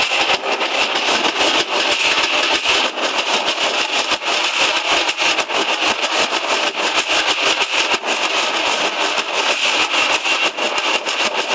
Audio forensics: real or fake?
real